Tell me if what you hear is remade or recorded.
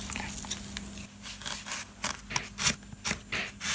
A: recorded